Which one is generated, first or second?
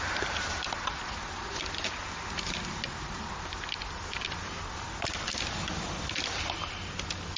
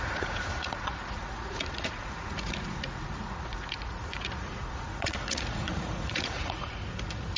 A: second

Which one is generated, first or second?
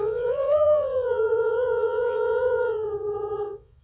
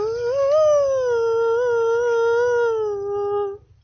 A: first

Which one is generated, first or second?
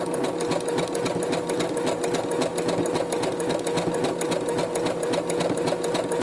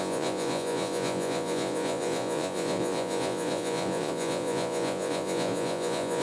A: second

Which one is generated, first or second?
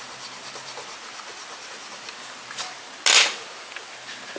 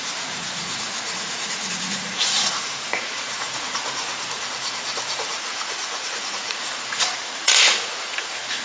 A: second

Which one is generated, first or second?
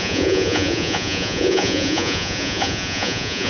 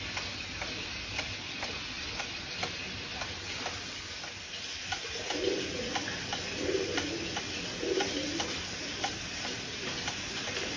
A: first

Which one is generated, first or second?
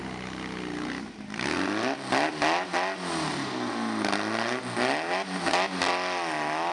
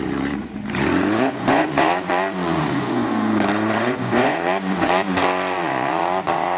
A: second